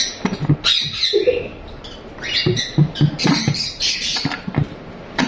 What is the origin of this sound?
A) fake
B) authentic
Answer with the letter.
B